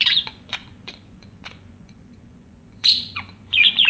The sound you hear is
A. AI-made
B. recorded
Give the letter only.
A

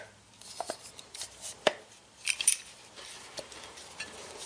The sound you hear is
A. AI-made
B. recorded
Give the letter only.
B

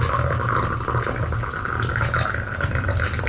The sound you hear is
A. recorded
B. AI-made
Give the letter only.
A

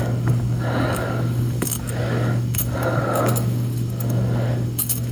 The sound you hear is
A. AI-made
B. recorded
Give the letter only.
A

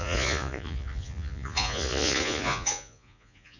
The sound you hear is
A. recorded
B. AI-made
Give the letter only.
B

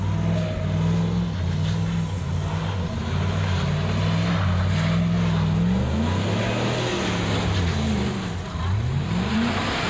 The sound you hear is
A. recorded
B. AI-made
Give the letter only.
A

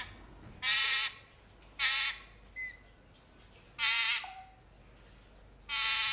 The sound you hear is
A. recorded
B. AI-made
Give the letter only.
A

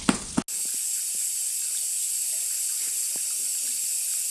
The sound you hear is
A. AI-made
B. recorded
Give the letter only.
B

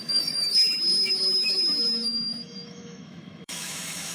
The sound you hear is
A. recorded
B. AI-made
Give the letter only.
B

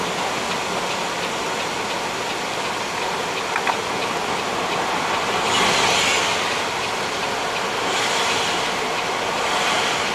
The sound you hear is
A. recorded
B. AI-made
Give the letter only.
A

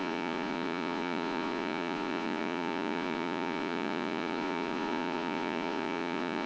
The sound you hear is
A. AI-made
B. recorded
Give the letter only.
A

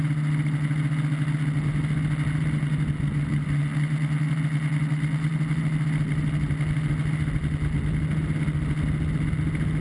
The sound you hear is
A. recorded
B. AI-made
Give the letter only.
A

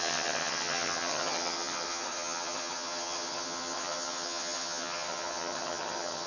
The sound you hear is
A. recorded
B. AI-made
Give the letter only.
B